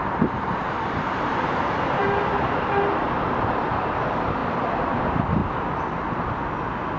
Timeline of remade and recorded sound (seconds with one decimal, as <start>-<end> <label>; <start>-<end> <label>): 0.0-2.0 remade; 2.0-3.7 recorded; 3.7-4.4 remade; 4.4-5.0 recorded; 5.0-5.4 remade; 5.4-7.0 recorded